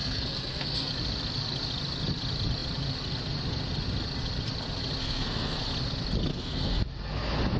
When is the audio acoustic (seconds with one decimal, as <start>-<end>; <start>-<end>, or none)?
0.9-5.0; 5.6-6.3; 6.8-7.6

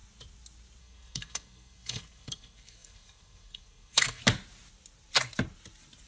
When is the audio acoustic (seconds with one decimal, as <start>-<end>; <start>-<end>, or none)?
0.0-0.8; 4.2-6.1

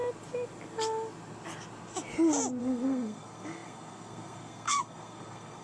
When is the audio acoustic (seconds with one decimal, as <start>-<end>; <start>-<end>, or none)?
0.0-2.6